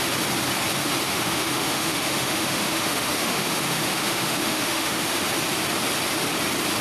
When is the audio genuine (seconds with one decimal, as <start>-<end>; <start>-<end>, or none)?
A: 0.0-1.1; 5.2-6.8